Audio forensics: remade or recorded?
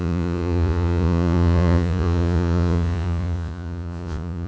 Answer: remade